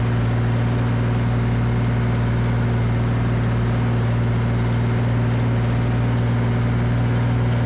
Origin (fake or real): real